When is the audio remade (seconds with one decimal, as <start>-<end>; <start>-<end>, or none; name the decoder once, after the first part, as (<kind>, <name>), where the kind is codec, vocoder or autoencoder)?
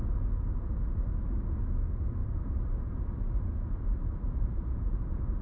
2.2-5.4 (vocoder, BigVGAN v2)